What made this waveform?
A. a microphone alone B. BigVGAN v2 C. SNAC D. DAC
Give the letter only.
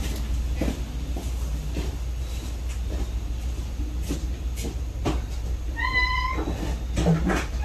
A